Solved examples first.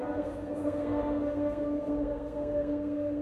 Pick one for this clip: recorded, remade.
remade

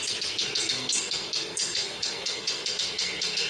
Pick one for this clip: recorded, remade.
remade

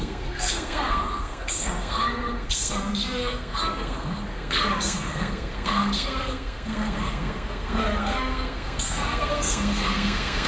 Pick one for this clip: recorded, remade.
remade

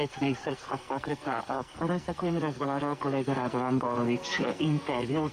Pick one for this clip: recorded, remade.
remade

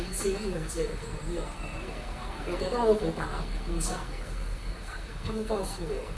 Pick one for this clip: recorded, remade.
remade